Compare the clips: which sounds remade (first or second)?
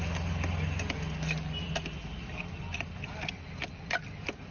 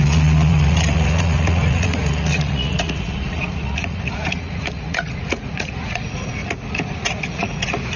second